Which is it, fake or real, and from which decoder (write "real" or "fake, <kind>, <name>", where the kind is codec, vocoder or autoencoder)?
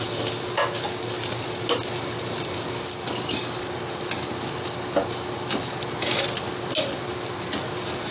real